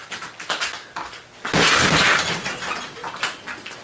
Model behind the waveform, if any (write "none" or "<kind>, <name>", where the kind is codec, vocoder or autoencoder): none